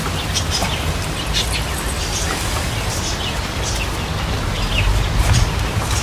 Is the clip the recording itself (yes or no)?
yes